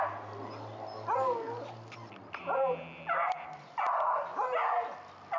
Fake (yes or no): no